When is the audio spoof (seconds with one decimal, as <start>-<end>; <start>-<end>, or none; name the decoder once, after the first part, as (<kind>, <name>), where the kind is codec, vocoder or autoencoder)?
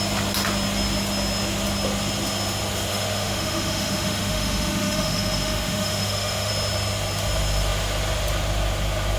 2.9-6.5 (autoencoder, DAC-VAE)